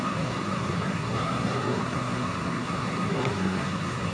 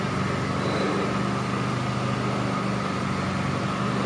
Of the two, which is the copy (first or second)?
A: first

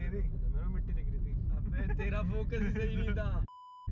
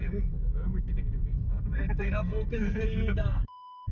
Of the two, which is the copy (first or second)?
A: second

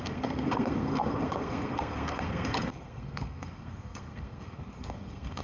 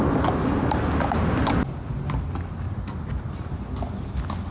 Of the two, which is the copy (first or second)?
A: first